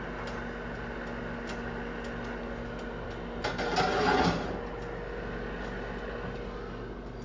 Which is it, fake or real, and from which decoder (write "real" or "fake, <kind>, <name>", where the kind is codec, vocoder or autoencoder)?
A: real